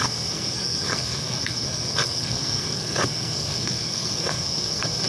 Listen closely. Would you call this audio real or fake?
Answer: fake